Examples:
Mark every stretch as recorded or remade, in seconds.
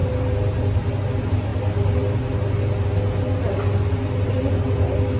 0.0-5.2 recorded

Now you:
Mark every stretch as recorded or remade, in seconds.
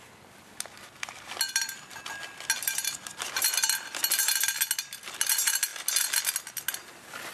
0.0-7.3 recorded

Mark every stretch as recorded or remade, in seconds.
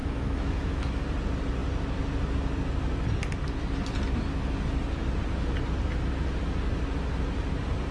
0.0-1.0 remade; 1.0-7.9 recorded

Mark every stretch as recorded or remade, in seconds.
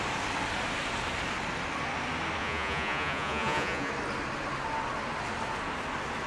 0.0-2.4 recorded; 2.4-3.9 remade; 3.9-6.3 recorded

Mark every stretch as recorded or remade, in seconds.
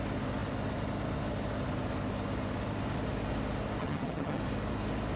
0.0-3.8 recorded; 3.8-4.4 remade; 4.4-5.2 recorded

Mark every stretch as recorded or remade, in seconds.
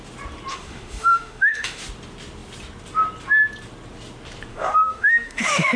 0.0-0.5 recorded; 0.5-1.8 remade; 1.8-4.5 recorded; 4.5-5.8 remade